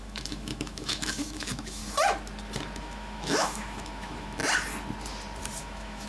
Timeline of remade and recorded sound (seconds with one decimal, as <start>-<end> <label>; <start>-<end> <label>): 0.0-1.8 remade; 1.8-2.8 recorded; 2.8-4.4 remade; 4.4-5.6 recorded; 5.6-6.1 remade